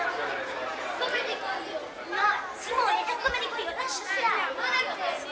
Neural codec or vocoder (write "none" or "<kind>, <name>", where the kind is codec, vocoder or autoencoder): none